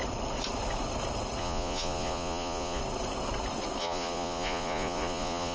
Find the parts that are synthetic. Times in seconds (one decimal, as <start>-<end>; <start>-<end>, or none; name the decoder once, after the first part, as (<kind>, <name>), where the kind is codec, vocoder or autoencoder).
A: 1.4-2.8 (vocoder, Vocos); 3.8-5.5